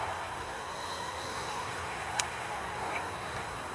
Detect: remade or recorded remade